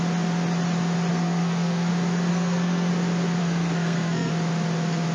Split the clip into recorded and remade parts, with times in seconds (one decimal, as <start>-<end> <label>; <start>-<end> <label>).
0.0-1.1 recorded; 1.1-1.9 remade; 1.9-2.3 recorded; 2.3-2.9 remade; 2.9-3.4 recorded; 3.4-4.3 remade; 4.3-5.1 recorded